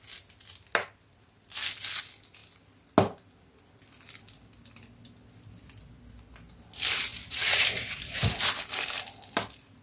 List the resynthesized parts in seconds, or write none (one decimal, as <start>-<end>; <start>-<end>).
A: 7.1-8.4